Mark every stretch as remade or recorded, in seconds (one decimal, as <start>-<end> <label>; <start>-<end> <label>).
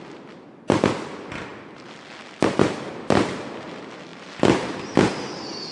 0.0-5.7 recorded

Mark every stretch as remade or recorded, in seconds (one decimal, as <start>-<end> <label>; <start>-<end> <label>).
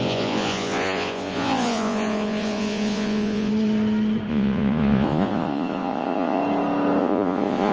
0.0-3.5 remade; 3.5-4.3 recorded; 4.3-6.4 remade; 6.4-7.0 recorded; 7.0-7.7 remade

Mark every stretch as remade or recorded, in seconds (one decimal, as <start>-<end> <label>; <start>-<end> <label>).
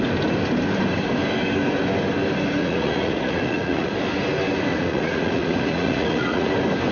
0.0-2.6 recorded; 2.6-3.9 remade; 3.9-4.7 recorded; 4.7-6.5 remade; 6.5-6.9 recorded